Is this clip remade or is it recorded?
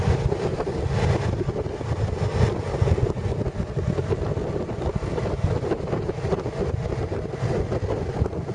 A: recorded